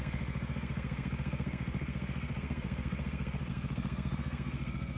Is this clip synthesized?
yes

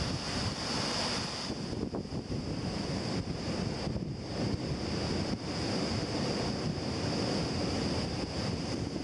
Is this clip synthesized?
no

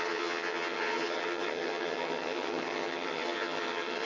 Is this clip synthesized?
yes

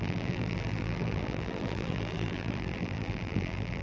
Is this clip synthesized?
yes